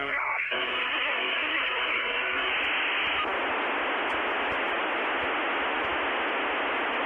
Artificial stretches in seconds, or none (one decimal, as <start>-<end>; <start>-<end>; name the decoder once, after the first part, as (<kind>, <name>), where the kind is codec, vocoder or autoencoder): 0.0-2.5 (codec, SNAC)